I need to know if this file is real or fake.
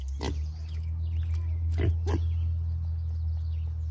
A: real